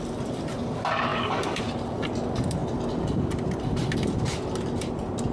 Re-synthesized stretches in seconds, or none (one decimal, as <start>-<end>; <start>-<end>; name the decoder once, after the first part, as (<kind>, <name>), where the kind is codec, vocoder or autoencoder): 1.1-1.6 (codec, DAC)